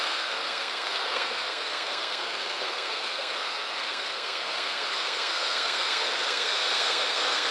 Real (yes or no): no